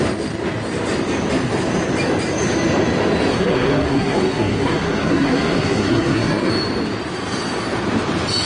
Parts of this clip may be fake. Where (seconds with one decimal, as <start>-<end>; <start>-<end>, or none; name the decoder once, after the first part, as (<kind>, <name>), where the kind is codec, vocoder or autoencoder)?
3.3-6.5 (codec, SNAC)